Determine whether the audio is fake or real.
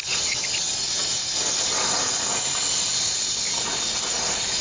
real